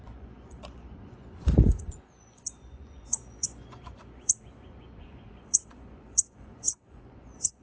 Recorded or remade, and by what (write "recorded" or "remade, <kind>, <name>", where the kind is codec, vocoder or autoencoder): remade, vocoder, Vocos